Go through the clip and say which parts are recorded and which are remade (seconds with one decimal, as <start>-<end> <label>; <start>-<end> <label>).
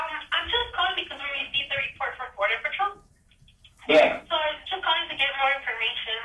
0.0-0.6 recorded; 0.6-3.9 remade; 3.9-6.2 recorded